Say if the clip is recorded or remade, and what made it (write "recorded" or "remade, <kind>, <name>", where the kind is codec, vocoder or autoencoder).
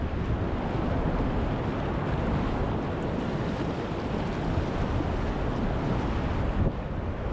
recorded